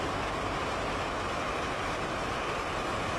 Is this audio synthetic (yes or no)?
no